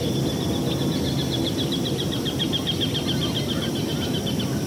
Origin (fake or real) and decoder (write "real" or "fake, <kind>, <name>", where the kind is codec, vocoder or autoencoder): real